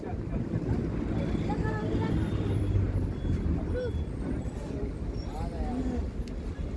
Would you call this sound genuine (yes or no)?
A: yes